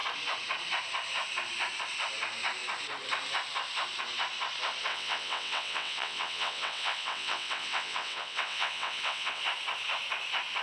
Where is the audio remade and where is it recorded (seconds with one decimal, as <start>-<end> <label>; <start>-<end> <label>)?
0.0-4.9 recorded; 4.9-9.4 remade; 9.4-10.6 recorded